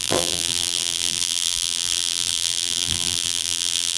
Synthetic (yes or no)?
yes